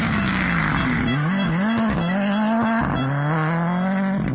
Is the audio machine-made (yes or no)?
no